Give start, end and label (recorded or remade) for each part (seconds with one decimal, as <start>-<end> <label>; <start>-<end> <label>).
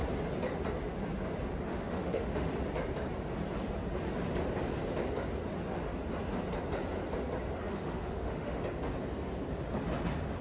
0.0-1.7 recorded; 1.7-2.5 remade; 2.5-7.7 recorded; 7.7-8.6 remade; 8.6-10.4 recorded